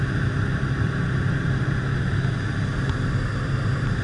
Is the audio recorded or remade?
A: recorded